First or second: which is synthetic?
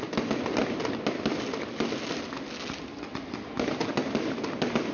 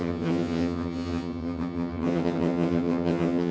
second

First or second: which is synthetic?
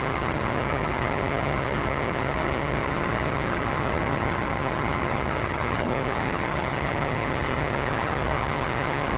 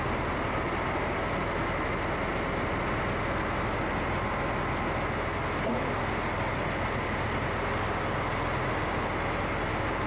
first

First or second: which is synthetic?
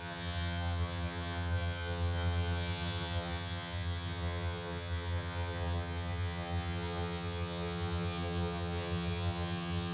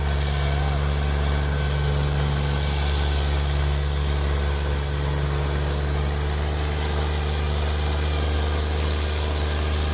first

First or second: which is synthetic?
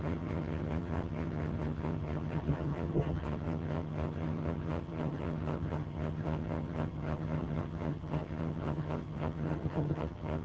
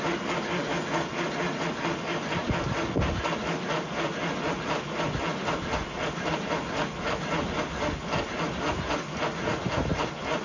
first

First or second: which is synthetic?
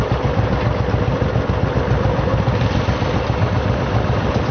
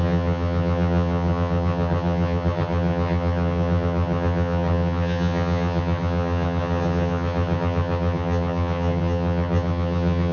second